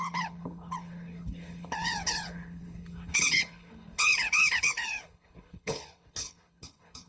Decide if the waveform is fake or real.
fake